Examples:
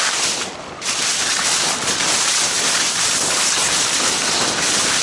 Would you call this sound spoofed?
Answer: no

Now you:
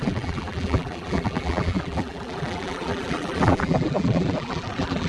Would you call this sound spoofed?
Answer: yes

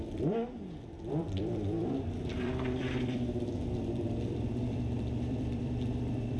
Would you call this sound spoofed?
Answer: yes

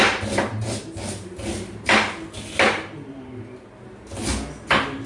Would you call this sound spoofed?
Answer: no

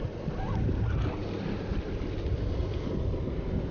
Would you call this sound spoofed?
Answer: no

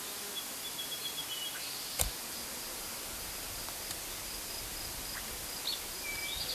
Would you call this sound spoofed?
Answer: no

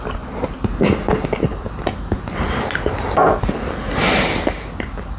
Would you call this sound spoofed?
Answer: no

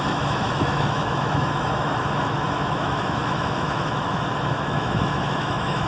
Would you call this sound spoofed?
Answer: yes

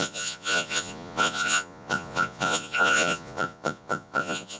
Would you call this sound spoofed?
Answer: yes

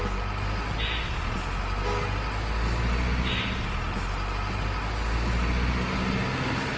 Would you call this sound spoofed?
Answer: no